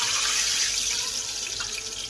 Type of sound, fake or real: real